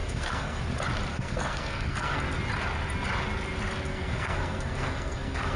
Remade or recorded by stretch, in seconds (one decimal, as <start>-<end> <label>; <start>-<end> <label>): 0.0-0.6 remade; 0.6-1.1 recorded; 1.1-2.2 remade; 2.2-3.9 recorded; 3.9-5.6 remade